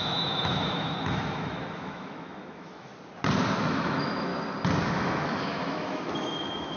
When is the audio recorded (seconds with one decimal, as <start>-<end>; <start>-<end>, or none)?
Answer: 2.9-3.6; 4.3-4.9